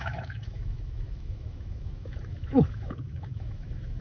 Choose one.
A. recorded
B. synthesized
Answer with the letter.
B